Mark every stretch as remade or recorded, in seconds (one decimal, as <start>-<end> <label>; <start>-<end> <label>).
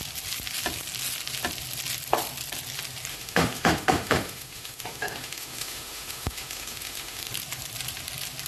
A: 0.0-3.1 recorded; 3.1-7.3 remade; 7.3-8.5 recorded